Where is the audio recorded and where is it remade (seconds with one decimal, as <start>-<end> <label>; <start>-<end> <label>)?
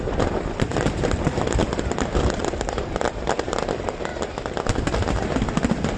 0.0-0.7 remade; 0.7-2.4 recorded; 2.4-4.1 remade; 4.1-6.0 recorded